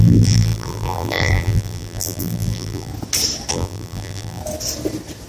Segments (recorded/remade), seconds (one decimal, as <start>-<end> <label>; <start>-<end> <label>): 0.0-2.9 remade; 2.9-3.5 recorded; 3.5-4.4 remade; 4.4-5.3 recorded